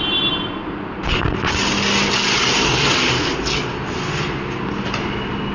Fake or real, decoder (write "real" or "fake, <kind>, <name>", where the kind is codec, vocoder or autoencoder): real